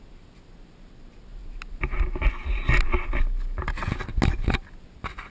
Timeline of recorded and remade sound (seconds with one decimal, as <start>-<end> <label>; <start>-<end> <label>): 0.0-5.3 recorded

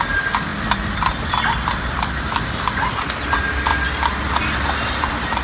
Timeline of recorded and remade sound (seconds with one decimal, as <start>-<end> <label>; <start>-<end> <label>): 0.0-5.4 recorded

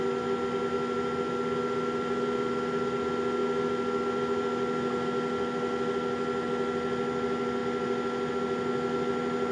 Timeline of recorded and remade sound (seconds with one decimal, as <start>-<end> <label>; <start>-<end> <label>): 0.0-9.5 recorded